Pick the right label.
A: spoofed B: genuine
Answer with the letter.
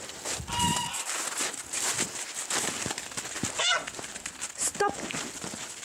B